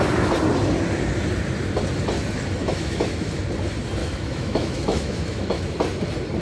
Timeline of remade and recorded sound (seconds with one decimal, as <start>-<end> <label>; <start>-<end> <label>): 0.0-2.6 recorded; 2.6-3.3 remade; 3.3-4.0 recorded; 4.0-5.7 remade; 5.7-6.4 recorded